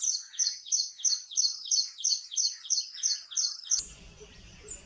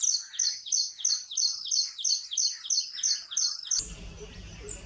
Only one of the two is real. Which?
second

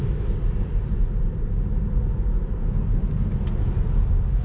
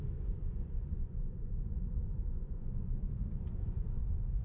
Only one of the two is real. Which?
first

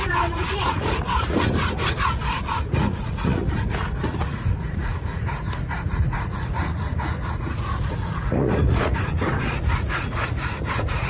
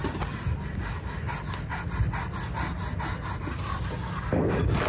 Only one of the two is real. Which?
second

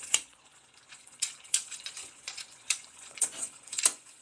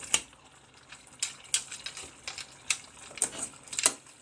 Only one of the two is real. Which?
second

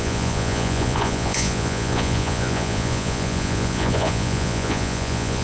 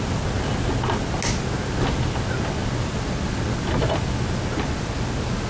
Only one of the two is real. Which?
second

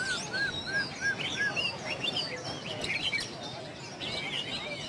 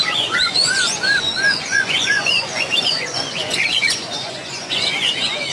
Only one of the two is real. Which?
first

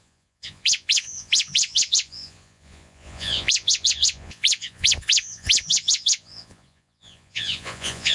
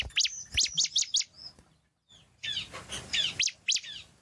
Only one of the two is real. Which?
second